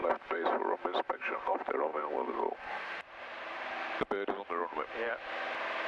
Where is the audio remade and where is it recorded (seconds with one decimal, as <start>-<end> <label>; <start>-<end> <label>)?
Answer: 0.0-1.9 recorded; 1.9-5.1 remade; 5.1-5.9 recorded